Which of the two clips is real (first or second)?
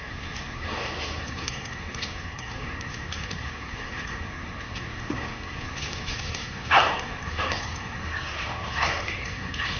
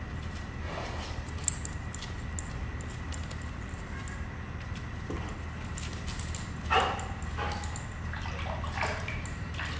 second